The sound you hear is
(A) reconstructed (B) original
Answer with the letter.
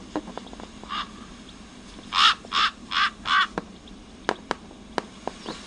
B